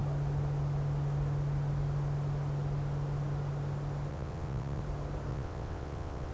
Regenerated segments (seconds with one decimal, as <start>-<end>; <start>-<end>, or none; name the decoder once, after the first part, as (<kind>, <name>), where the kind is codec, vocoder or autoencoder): 4.1-4.8 (vocoder, WaveNeXt); 5.3-6.3